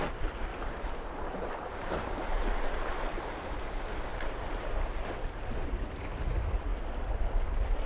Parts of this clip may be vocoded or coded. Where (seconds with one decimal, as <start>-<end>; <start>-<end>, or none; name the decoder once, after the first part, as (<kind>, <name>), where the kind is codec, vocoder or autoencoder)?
0.5-2.7 (vocoder, BigVGAN v2); 4.1-4.6